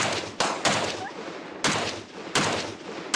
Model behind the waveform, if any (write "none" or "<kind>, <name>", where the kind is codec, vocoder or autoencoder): none